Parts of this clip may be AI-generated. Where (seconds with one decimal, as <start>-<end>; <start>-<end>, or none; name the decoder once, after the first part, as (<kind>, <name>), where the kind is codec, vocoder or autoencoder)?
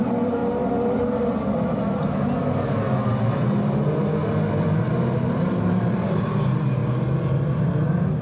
0.0-0.4 (vocoder, BigVGAN v2); 5.3-6.8